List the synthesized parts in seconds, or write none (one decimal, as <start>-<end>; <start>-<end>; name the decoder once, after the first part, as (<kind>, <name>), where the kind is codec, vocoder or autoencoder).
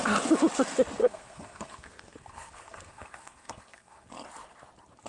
1.0-4.1 (codec, SNAC)